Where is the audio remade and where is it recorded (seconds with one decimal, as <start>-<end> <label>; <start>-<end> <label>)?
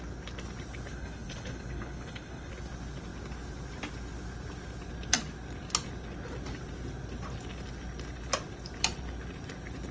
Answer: 0.0-0.9 recorded; 0.9-2.5 remade; 2.5-9.9 recorded